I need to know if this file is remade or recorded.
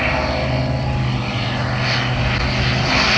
recorded